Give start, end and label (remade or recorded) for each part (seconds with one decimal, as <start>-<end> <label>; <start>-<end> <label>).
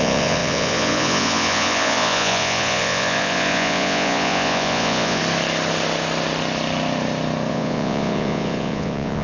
0.0-5.2 remade; 5.2-7.5 recorded; 7.5-9.2 remade